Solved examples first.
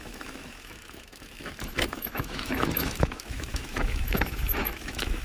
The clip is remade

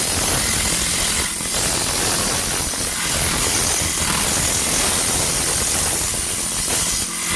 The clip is recorded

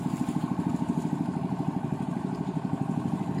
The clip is recorded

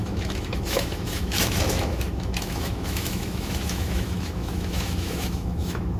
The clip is remade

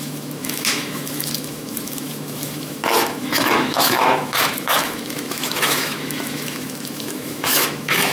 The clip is remade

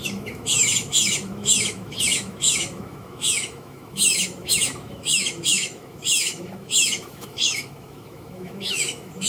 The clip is remade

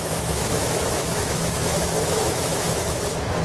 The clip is remade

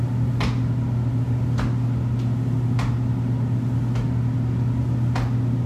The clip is recorded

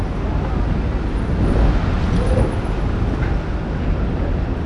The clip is recorded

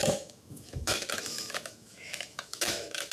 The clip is remade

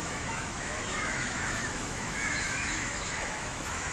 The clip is remade